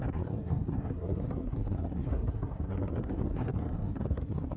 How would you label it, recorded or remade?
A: remade